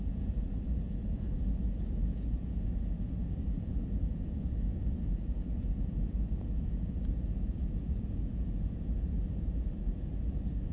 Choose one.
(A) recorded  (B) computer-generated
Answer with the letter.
B